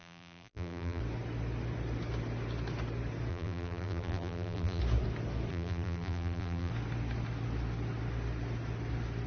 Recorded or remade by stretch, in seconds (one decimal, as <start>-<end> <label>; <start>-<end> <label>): 0.0-1.0 remade; 1.0-3.3 recorded; 3.3-4.8 remade; 4.8-5.5 recorded; 5.5-6.7 remade; 6.7-9.3 recorded